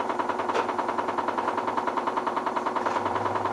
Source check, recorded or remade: remade